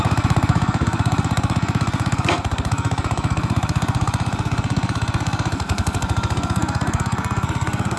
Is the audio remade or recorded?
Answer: remade